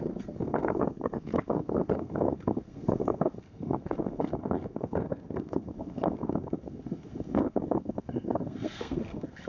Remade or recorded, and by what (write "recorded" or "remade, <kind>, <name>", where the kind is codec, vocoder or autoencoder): remade, codec, SNAC